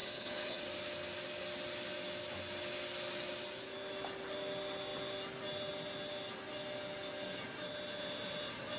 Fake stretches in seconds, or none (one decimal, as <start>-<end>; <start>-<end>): 0.0-0.6